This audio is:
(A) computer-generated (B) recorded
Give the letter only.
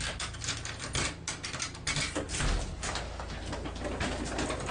B